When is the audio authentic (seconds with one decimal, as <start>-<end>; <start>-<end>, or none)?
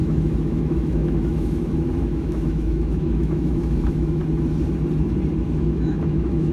4.2-5.5